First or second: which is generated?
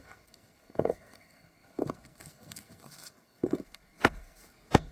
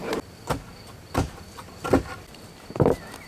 first